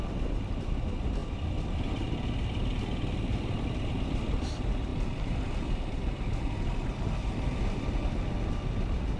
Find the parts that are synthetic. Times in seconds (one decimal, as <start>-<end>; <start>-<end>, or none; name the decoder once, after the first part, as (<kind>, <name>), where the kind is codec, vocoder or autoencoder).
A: none